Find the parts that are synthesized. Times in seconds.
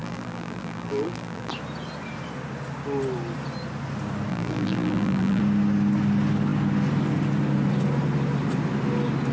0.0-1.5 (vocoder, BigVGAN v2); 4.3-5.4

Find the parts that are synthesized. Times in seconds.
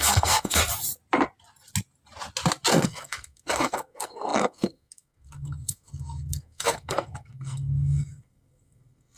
0.0-0.6 (codec, SNAC); 2.7-9.2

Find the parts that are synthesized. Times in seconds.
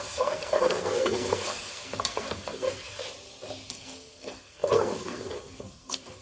0.0-3.0 (codec, SNAC); 3.7-6.2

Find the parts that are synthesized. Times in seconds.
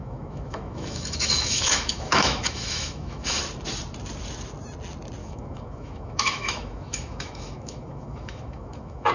0.0-3.4 (autoencoder, DAC-VAE); 5.2-9.1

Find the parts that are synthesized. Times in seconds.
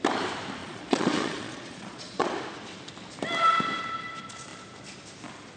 0.6-2.3 (vocoder, Vocos)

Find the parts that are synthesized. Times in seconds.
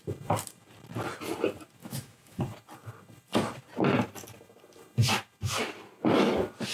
1.8-2.4 (autoencoder, DAC-VAE)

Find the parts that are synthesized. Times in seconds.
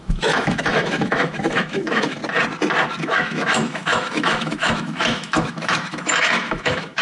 0.0-2.2 (autoencoder, DAC-VAE); 3.0-7.0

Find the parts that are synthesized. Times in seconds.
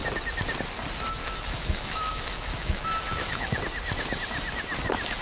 1.2-3.6 (autoencoder, DAC-VAE)